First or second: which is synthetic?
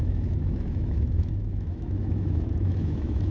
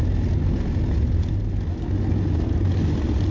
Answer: first